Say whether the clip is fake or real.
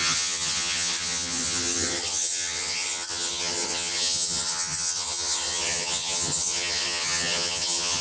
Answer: fake